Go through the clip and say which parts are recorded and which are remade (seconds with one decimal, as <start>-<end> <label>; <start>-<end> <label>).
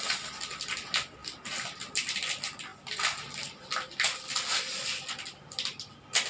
0.0-6.3 recorded